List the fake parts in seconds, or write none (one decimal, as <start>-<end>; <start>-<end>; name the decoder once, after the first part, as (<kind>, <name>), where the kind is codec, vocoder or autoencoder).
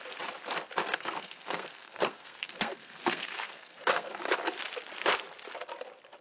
0.9-4.2 (codec, SNAC)